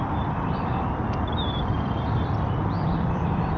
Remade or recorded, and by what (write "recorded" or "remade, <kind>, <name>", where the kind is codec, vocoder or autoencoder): remade, vocoder, BigVGAN v2